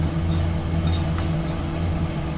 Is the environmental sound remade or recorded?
recorded